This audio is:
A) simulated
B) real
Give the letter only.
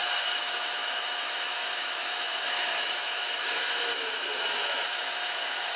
A